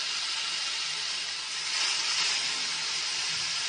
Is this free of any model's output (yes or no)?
yes